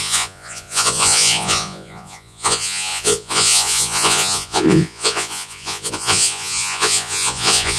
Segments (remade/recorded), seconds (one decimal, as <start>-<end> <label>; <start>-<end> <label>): 0.0-7.8 remade